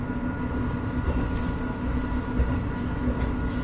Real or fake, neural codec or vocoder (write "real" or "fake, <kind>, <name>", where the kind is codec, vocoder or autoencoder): real